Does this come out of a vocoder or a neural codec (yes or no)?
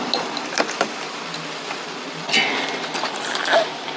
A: no